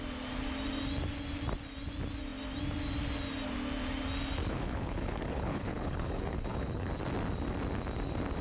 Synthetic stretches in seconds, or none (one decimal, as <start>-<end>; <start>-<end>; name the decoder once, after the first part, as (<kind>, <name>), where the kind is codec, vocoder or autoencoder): 4.4-6.9 (codec, HILCodec)